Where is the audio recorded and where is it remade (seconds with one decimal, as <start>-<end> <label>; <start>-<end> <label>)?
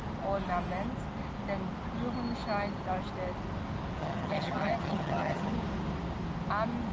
0.0-4.0 recorded; 4.0-5.5 remade; 5.5-6.9 recorded